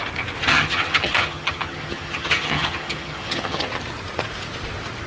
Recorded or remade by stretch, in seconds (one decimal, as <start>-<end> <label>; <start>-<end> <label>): 0.0-0.5 recorded; 0.5-3.6 remade; 3.6-5.1 recorded